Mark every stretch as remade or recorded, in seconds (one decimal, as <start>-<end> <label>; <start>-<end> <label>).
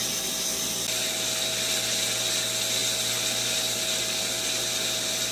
0.0-5.3 recorded